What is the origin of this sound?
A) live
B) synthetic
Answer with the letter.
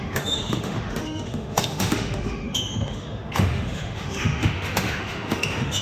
B